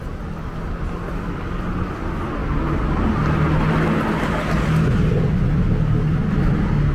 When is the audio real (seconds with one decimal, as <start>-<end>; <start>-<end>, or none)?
0.0-6.9